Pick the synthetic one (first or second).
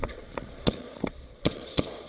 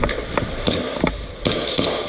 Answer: first